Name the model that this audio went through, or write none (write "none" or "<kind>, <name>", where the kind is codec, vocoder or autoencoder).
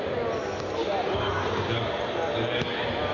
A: none